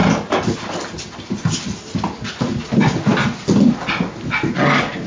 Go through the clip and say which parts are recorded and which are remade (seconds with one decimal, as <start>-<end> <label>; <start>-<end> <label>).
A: 0.0-5.1 recorded